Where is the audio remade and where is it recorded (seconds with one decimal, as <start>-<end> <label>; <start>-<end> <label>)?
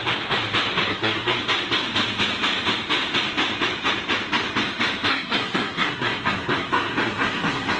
0.0-0.9 recorded; 0.9-1.4 remade; 1.4-5.1 recorded; 5.1-7.8 remade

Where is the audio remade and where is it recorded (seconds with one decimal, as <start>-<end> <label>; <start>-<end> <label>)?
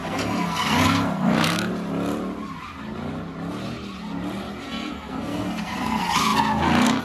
0.0-1.7 remade; 1.7-4.6 recorded; 4.6-7.0 remade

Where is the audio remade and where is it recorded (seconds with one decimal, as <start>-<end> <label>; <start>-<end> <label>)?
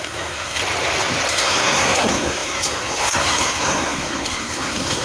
0.0-0.6 remade; 0.6-1.3 recorded; 1.3-5.0 remade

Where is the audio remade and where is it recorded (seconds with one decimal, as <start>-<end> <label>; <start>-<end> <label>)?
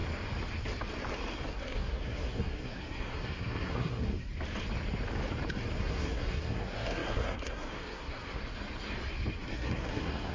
0.0-1.5 recorded; 1.5-4.3 remade; 4.3-5.8 recorded; 5.8-8.4 remade; 8.4-9.4 recorded; 9.4-10.3 remade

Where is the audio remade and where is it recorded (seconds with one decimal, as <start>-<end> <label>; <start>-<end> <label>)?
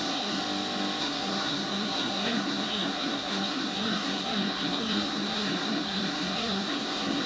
0.0-0.4 remade; 0.4-1.0 recorded; 1.0-7.3 remade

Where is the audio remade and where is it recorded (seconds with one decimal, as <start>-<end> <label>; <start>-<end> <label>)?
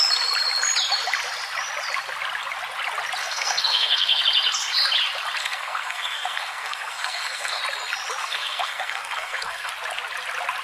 0.0-3.2 recorded; 3.2-4.2 remade; 4.2-5.4 recorded; 5.4-7.6 remade; 7.6-8.2 recorded; 8.2-9.7 remade; 9.7-10.6 recorded